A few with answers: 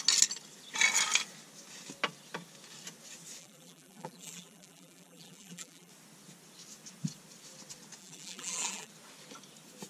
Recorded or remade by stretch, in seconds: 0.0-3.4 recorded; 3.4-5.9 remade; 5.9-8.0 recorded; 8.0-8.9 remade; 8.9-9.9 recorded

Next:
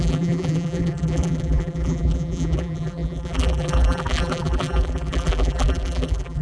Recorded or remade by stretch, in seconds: 0.0-6.4 remade

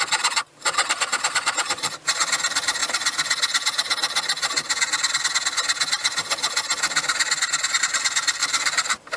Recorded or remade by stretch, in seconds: 0.0-2.8 remade; 2.8-7.8 recorded; 7.8-9.2 remade

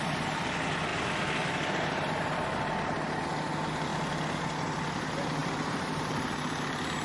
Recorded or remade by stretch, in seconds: 0.0-5.4 recorded; 5.4-6.3 remade; 6.3-7.0 recorded

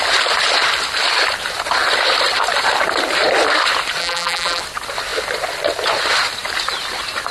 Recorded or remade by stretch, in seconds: 0.0-4.0 recorded; 4.0-4.6 remade; 4.6-7.3 recorded

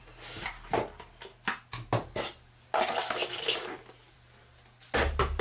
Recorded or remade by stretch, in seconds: 0.0-3.2 recorded; 3.2-4.4 remade; 4.4-5.4 recorded